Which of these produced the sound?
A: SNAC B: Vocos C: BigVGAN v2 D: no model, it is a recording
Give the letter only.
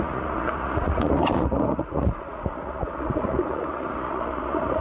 B